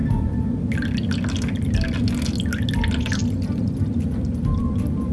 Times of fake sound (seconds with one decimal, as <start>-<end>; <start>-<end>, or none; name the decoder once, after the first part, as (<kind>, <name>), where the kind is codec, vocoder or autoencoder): none